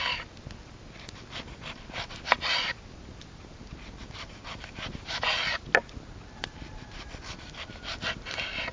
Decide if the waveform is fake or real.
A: real